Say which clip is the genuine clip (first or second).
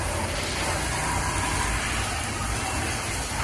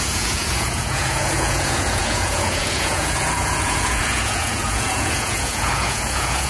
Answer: first